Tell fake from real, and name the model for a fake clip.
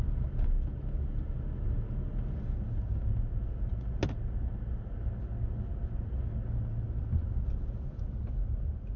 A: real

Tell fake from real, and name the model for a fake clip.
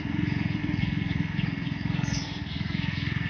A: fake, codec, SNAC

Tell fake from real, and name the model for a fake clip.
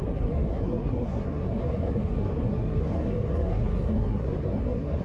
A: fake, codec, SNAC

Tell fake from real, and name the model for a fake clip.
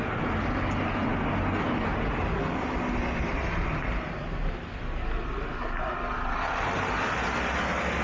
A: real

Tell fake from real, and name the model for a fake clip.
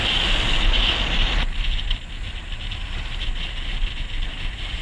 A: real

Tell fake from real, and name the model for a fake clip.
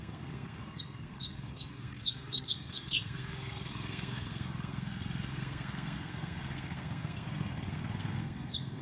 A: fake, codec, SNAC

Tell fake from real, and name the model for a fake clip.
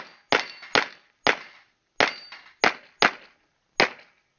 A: real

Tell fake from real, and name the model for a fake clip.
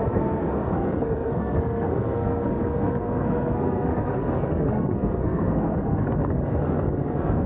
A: fake, codec, SNAC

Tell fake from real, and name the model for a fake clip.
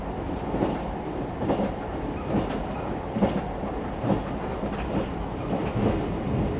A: real